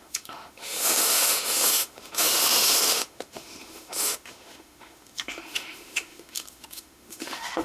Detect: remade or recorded remade